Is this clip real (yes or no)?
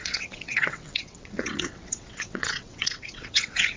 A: no